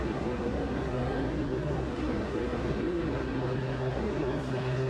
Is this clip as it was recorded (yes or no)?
no